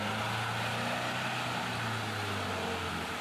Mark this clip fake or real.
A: real